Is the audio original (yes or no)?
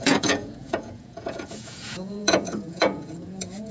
no